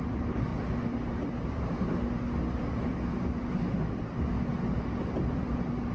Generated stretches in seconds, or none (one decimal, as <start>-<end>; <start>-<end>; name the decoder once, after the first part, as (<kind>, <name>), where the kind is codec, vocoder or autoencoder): none